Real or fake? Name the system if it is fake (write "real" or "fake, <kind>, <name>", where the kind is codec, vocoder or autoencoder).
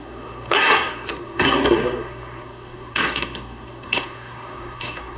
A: fake, codec, SNAC